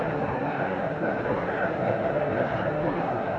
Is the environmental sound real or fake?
fake